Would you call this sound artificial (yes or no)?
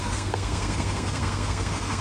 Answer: yes